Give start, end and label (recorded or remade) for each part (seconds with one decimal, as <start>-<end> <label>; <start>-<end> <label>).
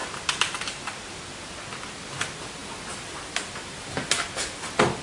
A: 0.0-1.2 remade; 1.2-5.0 recorded